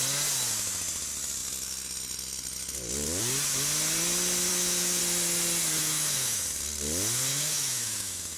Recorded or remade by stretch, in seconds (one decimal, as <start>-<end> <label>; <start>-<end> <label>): 0.0-4.5 recorded; 4.5-5.0 remade; 5.0-5.8 recorded; 5.8-6.4 remade; 6.4-7.3 recorded; 7.3-8.4 remade